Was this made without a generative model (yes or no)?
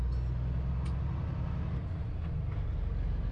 yes